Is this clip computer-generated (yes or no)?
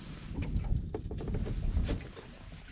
no